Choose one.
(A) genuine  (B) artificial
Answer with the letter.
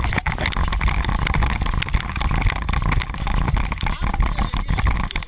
A